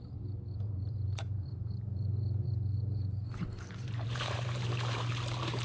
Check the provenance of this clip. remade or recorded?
remade